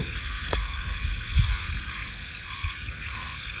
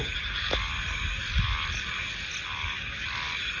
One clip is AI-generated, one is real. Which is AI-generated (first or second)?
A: first